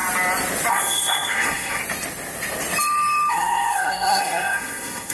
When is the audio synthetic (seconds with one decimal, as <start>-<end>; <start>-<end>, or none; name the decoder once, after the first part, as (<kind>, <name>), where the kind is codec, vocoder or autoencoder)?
0.7-1.8 (codec, SNAC); 3.3-5.1